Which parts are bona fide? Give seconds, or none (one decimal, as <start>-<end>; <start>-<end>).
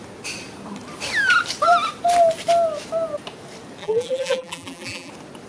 0.0-3.8; 5.1-5.5